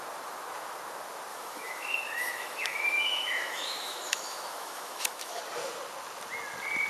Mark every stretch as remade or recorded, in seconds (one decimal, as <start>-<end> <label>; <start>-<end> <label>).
0.0-1.3 recorded; 1.3-5.4 remade; 5.4-6.9 recorded